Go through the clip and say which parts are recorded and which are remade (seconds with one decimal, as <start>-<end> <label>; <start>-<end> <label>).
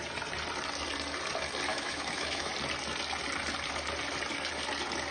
0.0-1.7 recorded; 1.7-2.5 remade; 2.5-5.1 recorded